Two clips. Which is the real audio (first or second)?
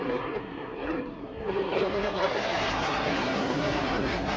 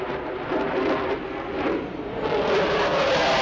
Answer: second